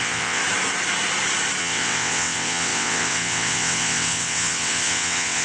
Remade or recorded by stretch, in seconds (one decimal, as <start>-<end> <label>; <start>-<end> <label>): 0.0-0.4 remade; 0.4-1.6 recorded; 1.6-5.4 remade